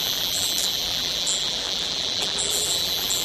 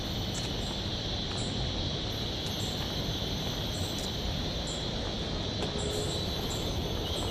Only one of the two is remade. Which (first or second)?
first